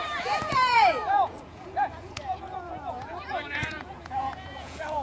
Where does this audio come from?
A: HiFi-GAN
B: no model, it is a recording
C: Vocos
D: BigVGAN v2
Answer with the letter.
C